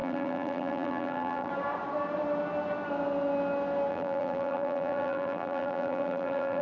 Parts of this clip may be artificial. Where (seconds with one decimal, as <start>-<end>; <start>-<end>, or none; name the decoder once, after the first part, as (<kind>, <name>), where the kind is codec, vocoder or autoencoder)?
0.0-1.5 (vocoder, BigVGAN v2); 3.9-6.6